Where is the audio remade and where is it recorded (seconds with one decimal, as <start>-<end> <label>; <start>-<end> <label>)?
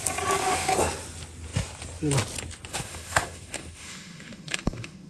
0.0-0.4 recorded; 0.4-0.9 remade; 0.9-2.7 recorded; 2.7-5.1 remade